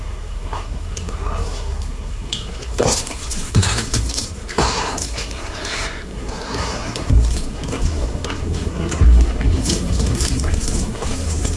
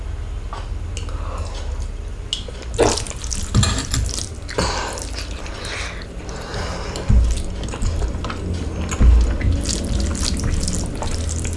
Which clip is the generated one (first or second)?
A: first